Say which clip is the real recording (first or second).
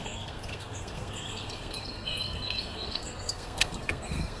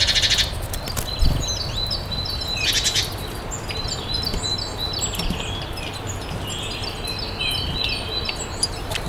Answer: second